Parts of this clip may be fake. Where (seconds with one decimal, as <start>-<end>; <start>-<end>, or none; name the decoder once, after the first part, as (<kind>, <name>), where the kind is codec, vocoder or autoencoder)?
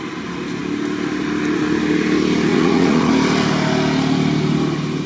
2.5-3.1 (vocoder, Vocos)